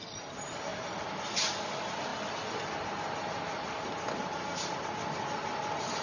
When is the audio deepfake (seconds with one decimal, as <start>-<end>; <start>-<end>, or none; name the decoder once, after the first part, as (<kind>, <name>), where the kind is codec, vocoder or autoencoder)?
none